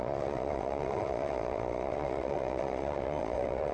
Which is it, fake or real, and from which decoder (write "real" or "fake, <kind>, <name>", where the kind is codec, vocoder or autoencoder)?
fake, vocoder, Vocos